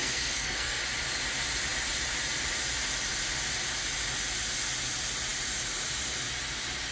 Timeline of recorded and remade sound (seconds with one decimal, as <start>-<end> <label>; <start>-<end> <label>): 0.0-0.8 remade; 0.8-6.9 recorded